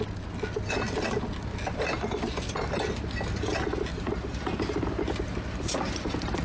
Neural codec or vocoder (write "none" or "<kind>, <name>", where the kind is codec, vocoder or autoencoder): none